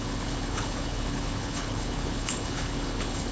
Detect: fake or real fake